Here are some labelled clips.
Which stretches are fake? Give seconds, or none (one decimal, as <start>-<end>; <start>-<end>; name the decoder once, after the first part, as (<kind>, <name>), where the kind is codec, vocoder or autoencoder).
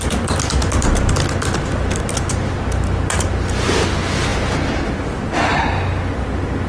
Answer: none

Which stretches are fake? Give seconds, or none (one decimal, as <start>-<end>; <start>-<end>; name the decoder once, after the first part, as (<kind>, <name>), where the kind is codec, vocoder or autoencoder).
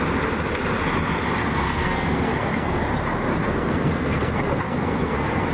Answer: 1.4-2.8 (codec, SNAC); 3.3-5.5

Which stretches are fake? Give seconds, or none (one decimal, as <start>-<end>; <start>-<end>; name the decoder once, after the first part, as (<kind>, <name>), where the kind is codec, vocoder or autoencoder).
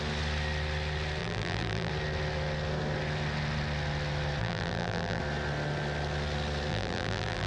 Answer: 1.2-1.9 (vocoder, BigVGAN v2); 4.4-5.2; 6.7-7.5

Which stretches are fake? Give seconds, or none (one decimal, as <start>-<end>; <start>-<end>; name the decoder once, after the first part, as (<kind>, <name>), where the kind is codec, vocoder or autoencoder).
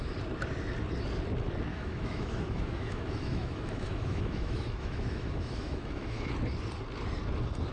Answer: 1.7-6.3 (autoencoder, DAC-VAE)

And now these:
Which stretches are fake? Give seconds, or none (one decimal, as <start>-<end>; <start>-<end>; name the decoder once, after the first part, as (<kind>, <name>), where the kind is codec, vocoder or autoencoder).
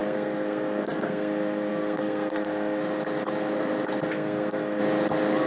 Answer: 0.0-2.8 (codec, SNAC); 4.1-4.8